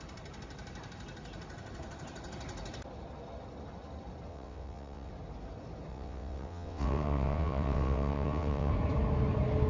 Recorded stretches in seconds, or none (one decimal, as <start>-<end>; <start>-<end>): 0.0-4.3; 5.1-5.9; 8.7-9.7